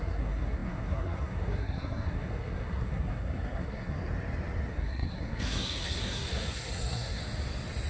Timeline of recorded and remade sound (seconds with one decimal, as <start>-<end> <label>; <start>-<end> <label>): 0.0-4.0 remade; 4.0-4.7 recorded; 4.7-7.2 remade; 7.2-7.9 recorded